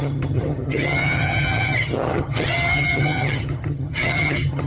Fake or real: fake